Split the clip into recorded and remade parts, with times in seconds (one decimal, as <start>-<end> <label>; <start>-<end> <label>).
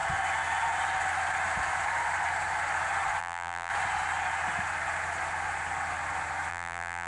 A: 0.0-3.2 recorded; 3.2-3.7 remade; 3.7-6.5 recorded; 6.5-7.1 remade